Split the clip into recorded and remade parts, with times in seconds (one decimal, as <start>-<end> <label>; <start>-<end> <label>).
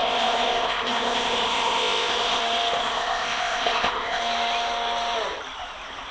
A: 0.0-2.4 remade; 2.4-2.8 recorded; 2.8-4.2 remade; 4.2-6.1 recorded